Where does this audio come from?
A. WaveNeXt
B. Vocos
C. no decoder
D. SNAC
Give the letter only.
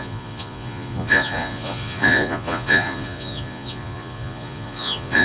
B